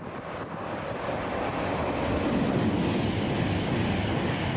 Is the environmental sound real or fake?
real